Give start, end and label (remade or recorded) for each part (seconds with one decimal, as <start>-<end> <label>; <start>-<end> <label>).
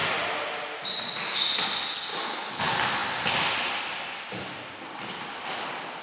0.0-2.1 recorded; 2.1-2.6 remade; 2.6-6.0 recorded